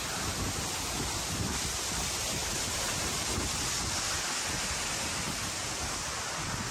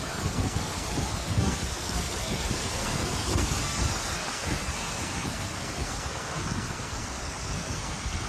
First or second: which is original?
first